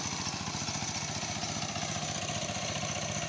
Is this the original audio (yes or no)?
yes